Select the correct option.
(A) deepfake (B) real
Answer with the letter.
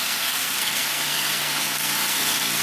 A